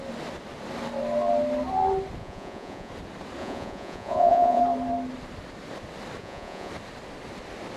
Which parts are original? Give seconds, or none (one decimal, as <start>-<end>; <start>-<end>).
0.0-2.2; 2.9-3.4; 4.6-6.2; 6.7-7.8